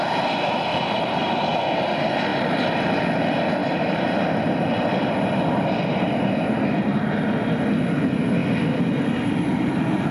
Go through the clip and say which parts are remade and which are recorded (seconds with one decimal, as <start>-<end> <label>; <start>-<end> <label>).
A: 0.0-0.7 recorded; 0.7-1.3 remade; 1.3-2.3 recorded; 2.3-3.0 remade; 3.0-3.6 recorded; 3.6-4.4 remade; 4.4-10.1 recorded